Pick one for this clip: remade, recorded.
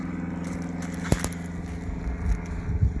recorded